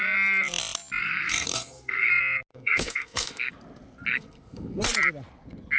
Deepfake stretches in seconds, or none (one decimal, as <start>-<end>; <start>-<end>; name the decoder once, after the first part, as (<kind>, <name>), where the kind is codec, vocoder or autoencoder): 1.0-2.1 (codec, SNAC); 2.5-3.5; 4.1-4.8

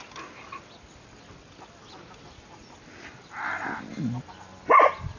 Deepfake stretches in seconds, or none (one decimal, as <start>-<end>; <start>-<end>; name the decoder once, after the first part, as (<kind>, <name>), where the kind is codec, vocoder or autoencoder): none

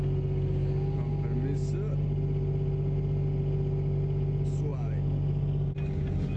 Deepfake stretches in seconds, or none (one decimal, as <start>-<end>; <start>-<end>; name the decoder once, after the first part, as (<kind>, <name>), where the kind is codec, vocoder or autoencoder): none

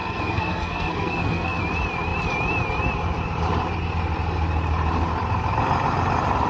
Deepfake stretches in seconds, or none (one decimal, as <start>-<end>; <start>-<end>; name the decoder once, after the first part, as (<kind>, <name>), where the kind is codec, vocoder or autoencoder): 0.0-1.6 (codec, SNAC)

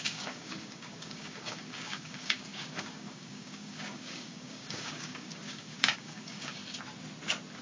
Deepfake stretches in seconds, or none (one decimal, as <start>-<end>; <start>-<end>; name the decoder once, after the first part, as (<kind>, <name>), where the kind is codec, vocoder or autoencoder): 0.0-6.6 (codec, DAC)

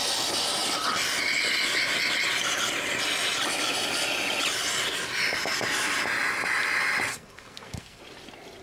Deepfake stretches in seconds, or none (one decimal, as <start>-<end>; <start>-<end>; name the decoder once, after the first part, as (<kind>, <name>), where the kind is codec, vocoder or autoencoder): 7.1-8.0 (codec, SNAC)

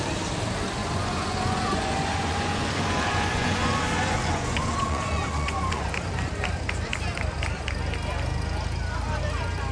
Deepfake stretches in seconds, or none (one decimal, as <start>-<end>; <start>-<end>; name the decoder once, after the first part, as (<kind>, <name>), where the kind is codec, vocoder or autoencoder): 0.8-5.9 (vocoder, Vocos)